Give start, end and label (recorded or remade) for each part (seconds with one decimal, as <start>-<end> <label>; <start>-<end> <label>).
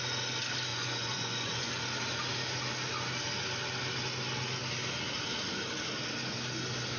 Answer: 0.0-0.7 recorded; 0.7-1.7 remade; 1.7-7.0 recorded